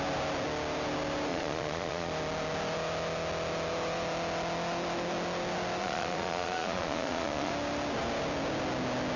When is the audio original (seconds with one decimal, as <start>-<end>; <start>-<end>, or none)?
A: 0.0-1.3; 2.1-5.8; 7.5-9.2